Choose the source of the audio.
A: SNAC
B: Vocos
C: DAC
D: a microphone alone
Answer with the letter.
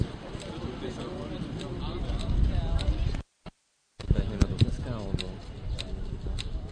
D